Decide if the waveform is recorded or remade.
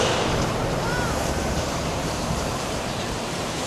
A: remade